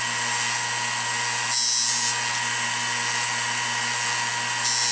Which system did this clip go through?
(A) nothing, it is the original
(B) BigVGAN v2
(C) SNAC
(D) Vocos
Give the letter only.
A